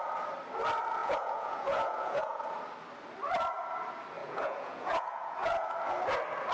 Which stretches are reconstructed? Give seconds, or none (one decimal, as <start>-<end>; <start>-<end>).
1.0-2.4; 4.2-5.7